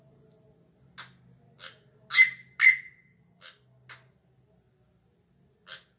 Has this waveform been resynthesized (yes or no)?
no